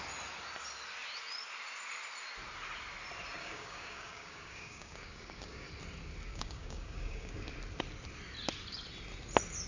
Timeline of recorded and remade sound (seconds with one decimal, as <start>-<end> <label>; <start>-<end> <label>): 0.0-3.4 recorded; 3.4-5.7 remade; 5.7-6.3 recorded; 6.3-7.3 remade; 7.3-9.7 recorded